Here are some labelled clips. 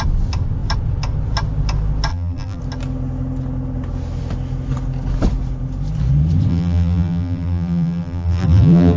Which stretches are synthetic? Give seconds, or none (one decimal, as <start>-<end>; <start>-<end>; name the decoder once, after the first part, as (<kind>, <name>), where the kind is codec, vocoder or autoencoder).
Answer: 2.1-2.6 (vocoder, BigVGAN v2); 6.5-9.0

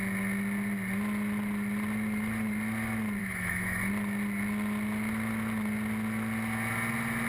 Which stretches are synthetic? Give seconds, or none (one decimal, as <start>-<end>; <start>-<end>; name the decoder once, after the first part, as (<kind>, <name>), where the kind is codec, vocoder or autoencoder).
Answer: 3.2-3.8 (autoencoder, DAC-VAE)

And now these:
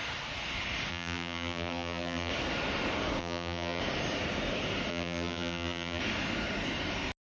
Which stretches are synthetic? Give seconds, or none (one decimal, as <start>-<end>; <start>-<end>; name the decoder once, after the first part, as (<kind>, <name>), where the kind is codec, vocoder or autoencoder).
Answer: 0.9-2.3 (vocoder, BigVGAN v2); 3.2-3.8; 4.9-6.0

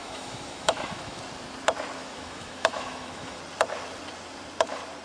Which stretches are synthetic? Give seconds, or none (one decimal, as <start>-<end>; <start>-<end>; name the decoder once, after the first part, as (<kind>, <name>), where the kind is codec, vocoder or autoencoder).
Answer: 0.0-1.2 (autoencoder, DAC-VAE); 2.0-3.4

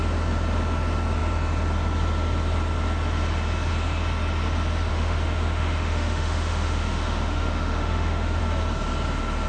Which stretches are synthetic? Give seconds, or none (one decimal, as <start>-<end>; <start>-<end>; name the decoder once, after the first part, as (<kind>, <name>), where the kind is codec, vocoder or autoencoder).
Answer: 4.9-8.4 (autoencoder, DAC-VAE)

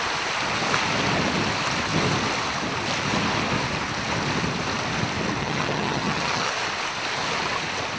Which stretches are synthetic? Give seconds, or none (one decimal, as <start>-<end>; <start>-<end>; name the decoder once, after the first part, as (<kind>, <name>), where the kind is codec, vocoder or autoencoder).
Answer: 5.4-6.5 (vocoder, HiFi-GAN)